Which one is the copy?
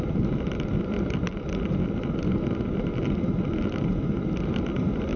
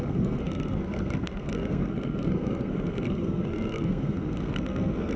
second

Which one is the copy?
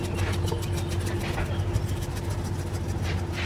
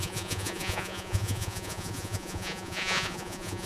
second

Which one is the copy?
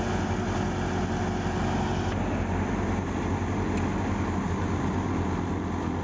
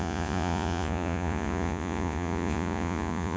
second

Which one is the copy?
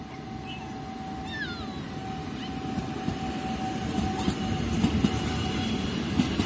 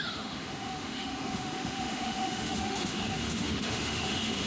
second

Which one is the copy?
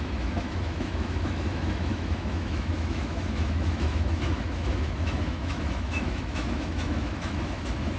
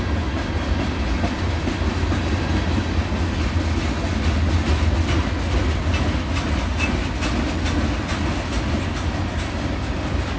first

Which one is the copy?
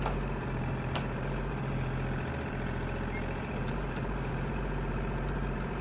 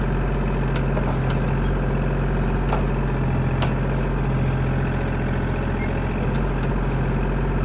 first